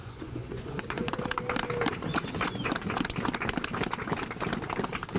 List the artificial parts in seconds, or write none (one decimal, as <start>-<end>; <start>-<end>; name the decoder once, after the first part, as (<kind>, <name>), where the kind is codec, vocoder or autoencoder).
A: 0.0-1.1 (vocoder, Vocos); 2.1-2.7